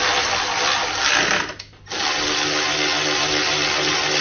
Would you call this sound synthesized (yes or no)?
no